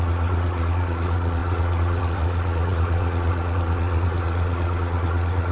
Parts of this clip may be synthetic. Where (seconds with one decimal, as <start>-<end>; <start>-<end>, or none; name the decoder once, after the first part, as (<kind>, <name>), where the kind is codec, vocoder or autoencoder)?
0.0-5.5 (vocoder, Vocos)